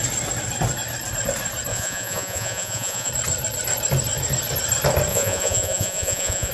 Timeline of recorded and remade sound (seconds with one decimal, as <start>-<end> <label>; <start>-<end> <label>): 0.0-1.7 recorded; 1.7-3.1 remade; 3.1-5.1 recorded; 5.1-6.5 remade